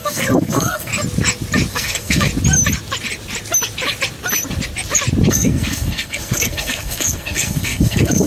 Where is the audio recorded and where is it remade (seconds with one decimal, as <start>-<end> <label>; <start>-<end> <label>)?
0.0-0.9 remade; 0.9-1.7 recorded; 1.7-2.3 remade; 2.3-5.3 recorded; 5.3-8.3 remade